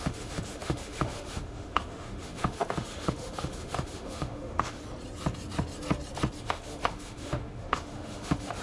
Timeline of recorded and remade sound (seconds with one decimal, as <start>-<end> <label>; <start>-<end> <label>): 0.0-4.8 remade; 4.8-6.4 recorded; 6.4-8.6 remade